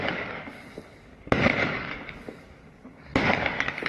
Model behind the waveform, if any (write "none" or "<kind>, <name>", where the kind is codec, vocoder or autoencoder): codec, DAC